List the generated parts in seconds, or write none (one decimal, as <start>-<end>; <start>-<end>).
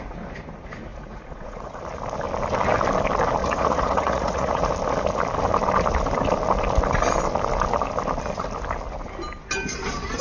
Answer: 0.9-1.8; 3.4-4.6